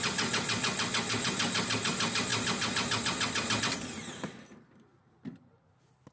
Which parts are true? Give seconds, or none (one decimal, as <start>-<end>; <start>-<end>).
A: 0.0-6.1